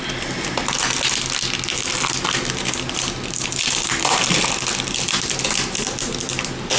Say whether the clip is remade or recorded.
recorded